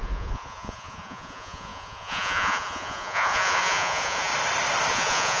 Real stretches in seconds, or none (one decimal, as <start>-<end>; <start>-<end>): 4.3-4.9